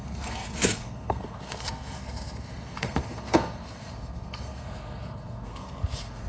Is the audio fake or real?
fake